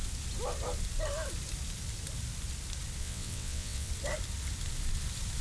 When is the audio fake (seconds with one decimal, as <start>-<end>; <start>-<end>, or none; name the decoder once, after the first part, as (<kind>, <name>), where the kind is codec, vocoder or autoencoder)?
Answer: 3.0-3.9 (vocoder, WaveNeXt)